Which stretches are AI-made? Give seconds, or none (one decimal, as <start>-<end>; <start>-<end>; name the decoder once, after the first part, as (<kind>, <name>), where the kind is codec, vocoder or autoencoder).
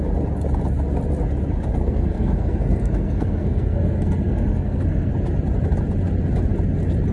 1.7-5.1 (codec, SNAC)